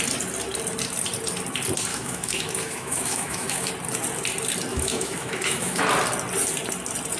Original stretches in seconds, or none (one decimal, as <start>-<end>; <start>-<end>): 0.0-1.9; 3.7-4.7; 5.8-7.2